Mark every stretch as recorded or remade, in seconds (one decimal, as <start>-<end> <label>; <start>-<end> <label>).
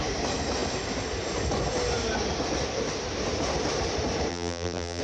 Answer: 0.0-4.3 recorded; 4.3-5.0 remade